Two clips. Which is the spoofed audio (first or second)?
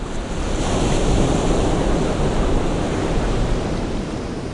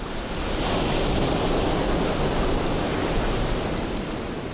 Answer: first